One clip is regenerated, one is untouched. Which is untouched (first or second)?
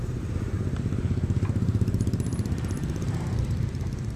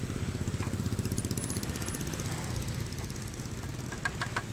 second